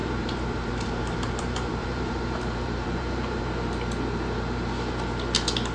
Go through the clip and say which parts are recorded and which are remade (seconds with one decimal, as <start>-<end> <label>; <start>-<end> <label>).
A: 0.0-3.4 remade; 3.4-5.7 recorded